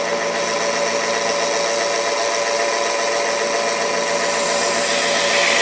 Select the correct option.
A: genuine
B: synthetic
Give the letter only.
A